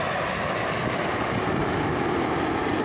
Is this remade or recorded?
recorded